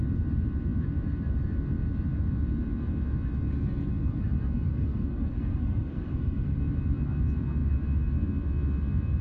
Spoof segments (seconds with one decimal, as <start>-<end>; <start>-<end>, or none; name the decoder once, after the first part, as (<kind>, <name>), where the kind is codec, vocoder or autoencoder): 4.7-6.6 (codec, SNAC)